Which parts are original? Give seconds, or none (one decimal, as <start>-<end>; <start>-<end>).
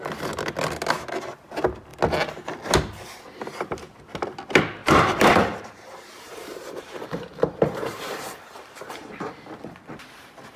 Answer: 0.0-4.8; 9.1-10.6